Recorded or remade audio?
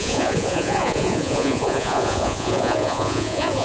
remade